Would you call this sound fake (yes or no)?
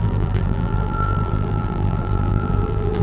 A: yes